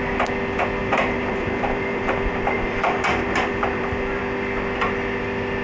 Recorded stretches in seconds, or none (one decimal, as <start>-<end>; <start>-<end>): 0.0-0.8; 4.2-5.6